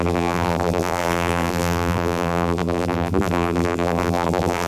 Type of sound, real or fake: fake